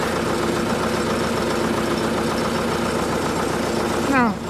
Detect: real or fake real